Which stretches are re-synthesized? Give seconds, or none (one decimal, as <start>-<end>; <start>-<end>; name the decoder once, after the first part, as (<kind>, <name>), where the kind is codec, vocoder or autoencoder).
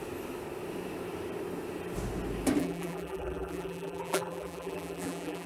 2.6-5.5 (vocoder, BigVGAN v2)